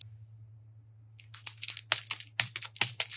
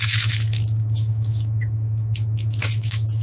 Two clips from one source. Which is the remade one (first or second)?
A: second